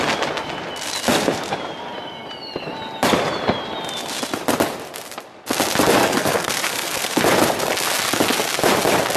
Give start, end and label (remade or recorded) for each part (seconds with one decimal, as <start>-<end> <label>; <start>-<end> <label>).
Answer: 0.0-6.0 recorded; 6.0-7.2 remade; 7.2-9.2 recorded

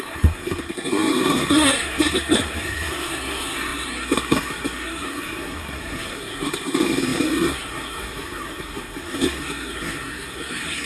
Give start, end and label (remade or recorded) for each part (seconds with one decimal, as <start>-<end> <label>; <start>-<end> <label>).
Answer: 0.0-10.9 remade

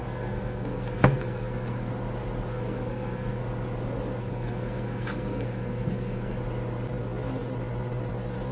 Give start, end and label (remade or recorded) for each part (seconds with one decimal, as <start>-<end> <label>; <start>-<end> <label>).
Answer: 0.0-1.9 remade; 1.9-2.5 recorded; 2.5-3.4 remade; 3.4-4.2 recorded; 4.2-6.4 remade; 6.4-8.5 recorded

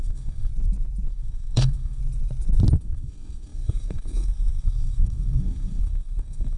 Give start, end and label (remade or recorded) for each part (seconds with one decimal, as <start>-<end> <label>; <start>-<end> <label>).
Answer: 0.0-0.5 remade; 0.5-1.1 recorded; 1.1-2.0 remade; 2.0-2.8 recorded; 2.8-6.6 remade

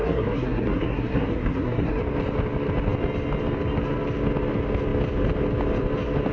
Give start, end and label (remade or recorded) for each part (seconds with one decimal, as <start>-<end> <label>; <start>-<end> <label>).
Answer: 0.0-2.0 remade; 2.0-6.3 recorded

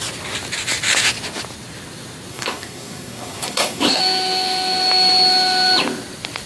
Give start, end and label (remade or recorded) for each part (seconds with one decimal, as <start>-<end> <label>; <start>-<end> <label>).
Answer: 0.0-2.3 recorded; 2.3-4.0 remade; 4.0-6.5 recorded

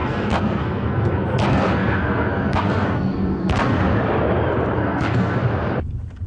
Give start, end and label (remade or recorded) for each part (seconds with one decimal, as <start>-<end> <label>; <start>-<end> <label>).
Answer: 0.0-3.8 remade; 3.8-4.8 recorded; 4.8-5.4 remade; 5.4-6.3 recorded